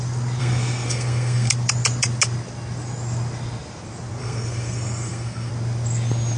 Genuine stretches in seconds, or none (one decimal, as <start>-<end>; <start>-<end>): 0.0-0.4; 1.5-4.2; 5.5-6.4